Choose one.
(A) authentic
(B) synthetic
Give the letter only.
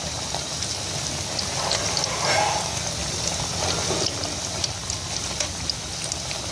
A